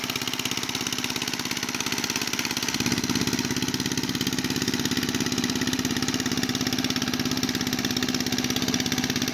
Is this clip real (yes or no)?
yes